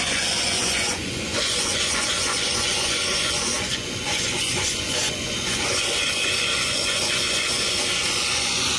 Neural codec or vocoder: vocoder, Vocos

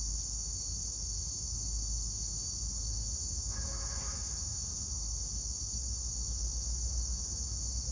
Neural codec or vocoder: autoencoder, DAC-VAE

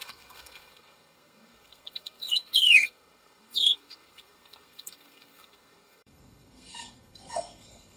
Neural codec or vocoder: codec, SNAC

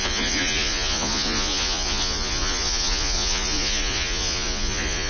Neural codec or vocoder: vocoder, Vocos